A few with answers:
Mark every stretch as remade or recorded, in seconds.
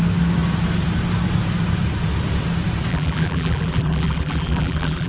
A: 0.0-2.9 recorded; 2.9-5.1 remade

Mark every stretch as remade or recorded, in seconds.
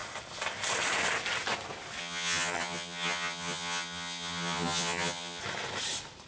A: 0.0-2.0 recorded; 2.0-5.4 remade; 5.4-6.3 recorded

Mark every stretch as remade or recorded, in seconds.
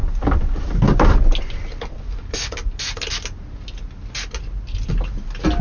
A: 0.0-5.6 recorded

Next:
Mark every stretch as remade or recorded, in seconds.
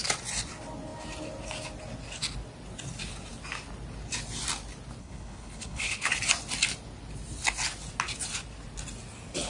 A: 0.0-5.0 recorded; 5.0-6.1 remade; 6.1-9.5 recorded